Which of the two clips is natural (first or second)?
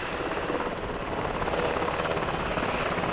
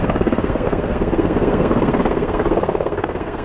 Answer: first